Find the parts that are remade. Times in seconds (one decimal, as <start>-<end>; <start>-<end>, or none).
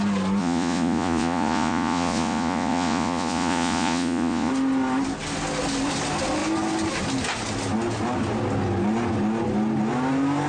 0.4-4.5